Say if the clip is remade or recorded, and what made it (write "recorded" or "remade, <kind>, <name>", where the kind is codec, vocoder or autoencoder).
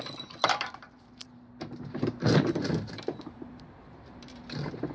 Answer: remade, vocoder, BigVGAN v2